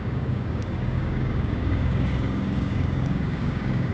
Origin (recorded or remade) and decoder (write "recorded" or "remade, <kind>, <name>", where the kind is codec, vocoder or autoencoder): remade, codec, DAC